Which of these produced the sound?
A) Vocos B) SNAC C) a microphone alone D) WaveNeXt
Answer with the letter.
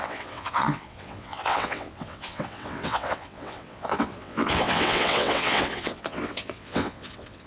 D